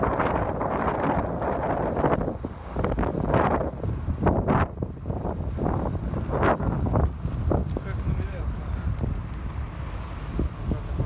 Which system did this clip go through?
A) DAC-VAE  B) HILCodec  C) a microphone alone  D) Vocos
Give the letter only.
C